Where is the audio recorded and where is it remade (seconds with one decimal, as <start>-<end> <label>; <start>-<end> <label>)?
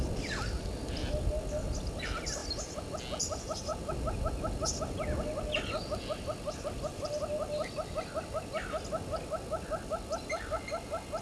0.0-11.2 recorded